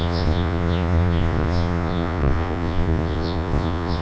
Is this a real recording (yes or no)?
no